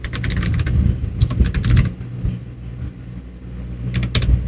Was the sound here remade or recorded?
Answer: recorded